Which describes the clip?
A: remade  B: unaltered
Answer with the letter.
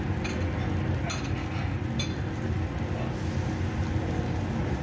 B